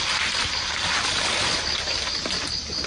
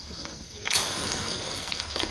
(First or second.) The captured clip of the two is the first